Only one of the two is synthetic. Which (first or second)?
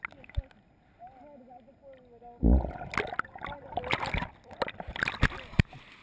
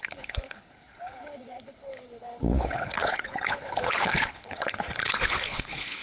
second